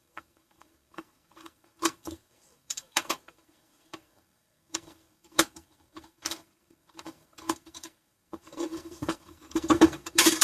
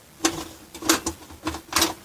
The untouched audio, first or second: second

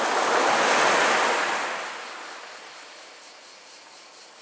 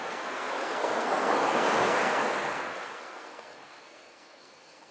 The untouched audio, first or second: first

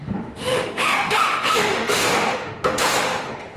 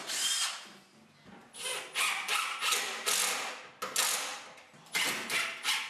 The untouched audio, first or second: second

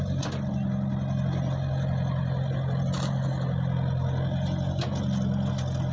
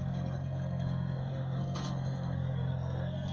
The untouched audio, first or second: first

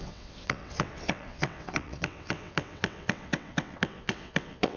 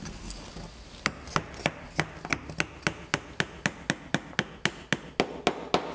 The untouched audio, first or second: second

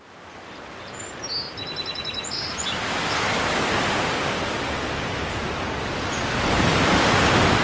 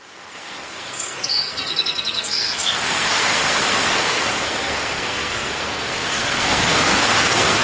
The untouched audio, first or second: first